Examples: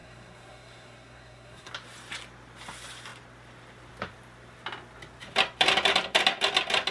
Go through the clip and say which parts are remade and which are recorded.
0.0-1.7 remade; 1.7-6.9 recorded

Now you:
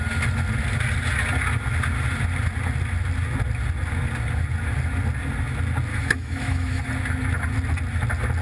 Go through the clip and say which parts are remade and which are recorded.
0.0-5.9 recorded; 5.9-6.8 remade; 6.8-8.4 recorded

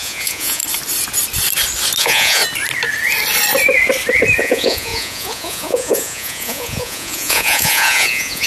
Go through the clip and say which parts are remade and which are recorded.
0.0-0.6 remade; 0.6-2.0 recorded; 2.0-2.4 remade; 2.4-4.4 recorded; 4.4-8.5 remade

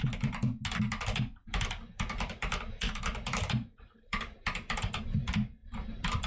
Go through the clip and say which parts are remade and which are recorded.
0.0-1.4 recorded; 1.4-5.0 remade; 5.0-5.6 recorded; 5.6-6.3 remade